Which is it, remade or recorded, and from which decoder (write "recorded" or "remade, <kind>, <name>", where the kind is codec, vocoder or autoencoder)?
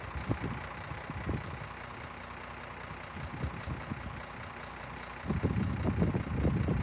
recorded